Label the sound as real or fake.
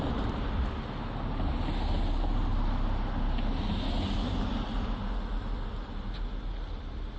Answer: real